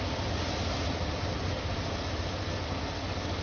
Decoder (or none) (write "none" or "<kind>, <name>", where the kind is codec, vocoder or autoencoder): none